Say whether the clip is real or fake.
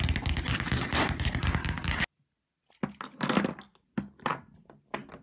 real